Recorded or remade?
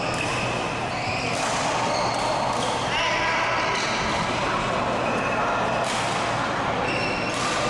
recorded